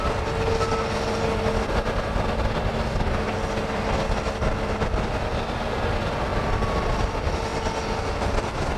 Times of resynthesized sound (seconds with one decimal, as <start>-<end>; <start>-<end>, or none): none